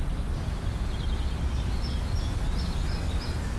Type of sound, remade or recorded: recorded